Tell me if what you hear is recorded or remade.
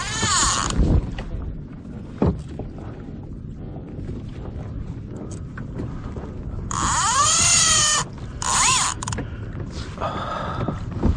recorded